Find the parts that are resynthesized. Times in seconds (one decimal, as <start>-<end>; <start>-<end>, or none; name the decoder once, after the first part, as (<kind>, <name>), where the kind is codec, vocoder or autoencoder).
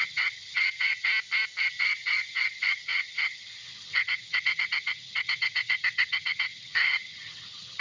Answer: 0.0-1.1 (vocoder, HiFi-GAN); 1.6-7.8